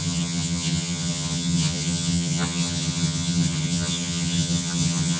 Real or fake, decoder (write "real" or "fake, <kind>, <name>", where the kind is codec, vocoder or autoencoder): fake, vocoder, HiFi-GAN